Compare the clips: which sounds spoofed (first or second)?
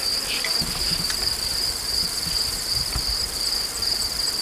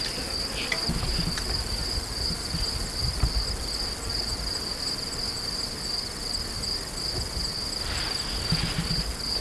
first